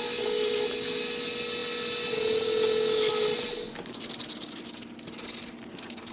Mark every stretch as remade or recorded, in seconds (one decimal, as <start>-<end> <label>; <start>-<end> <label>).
0.0-6.1 recorded